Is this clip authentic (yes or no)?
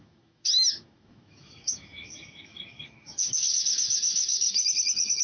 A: no